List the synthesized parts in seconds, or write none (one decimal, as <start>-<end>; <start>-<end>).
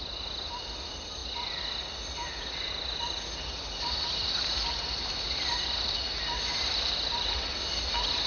none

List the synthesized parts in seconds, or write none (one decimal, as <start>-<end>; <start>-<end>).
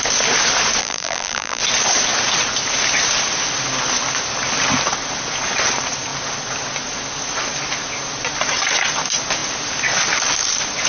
0.8-1.6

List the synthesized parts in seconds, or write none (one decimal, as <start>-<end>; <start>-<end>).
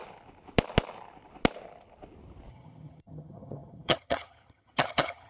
2.5-5.3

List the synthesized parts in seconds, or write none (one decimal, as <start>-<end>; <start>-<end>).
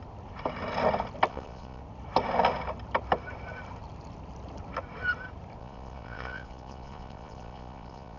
1.3-1.8; 5.6-8.2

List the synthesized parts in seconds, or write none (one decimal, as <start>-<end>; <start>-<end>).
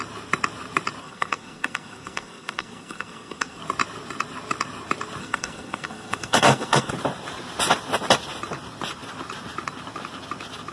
1.0-3.6; 5.2-6.9